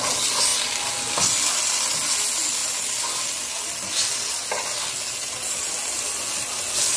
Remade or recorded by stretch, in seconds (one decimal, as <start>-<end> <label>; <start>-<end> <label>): 0.0-7.0 recorded